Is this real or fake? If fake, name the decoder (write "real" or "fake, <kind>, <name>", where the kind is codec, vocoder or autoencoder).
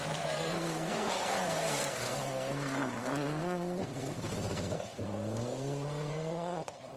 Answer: fake, codec, SNAC